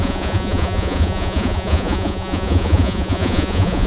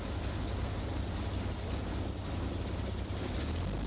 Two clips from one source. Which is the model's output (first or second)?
first